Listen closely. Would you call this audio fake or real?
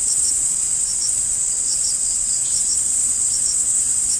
fake